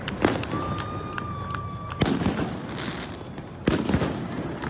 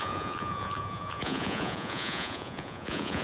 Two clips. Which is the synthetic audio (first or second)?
second